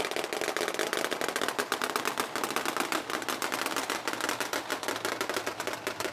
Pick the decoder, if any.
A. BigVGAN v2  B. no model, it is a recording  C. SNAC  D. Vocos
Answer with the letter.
B